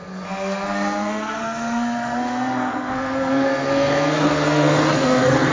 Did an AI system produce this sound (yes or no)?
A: yes